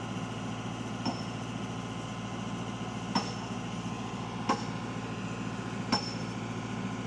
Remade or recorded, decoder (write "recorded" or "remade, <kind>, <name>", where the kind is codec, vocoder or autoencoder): recorded